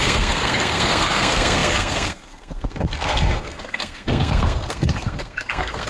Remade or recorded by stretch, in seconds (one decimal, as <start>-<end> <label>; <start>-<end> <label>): 0.0-5.9 remade